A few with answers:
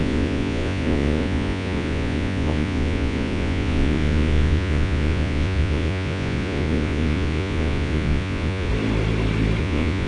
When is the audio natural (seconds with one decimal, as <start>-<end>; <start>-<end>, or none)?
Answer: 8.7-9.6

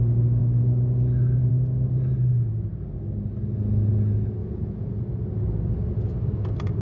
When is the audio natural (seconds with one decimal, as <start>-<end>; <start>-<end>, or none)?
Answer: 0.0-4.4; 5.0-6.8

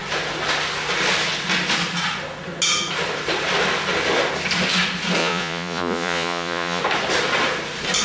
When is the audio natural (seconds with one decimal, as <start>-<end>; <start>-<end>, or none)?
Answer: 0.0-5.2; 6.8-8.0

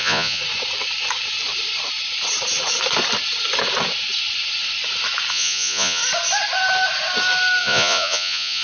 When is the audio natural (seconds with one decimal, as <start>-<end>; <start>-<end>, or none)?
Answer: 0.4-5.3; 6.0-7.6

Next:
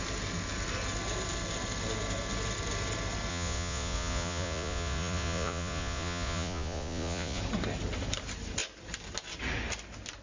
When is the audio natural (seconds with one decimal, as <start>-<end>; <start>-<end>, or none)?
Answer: 0.0-3.3; 7.4-10.2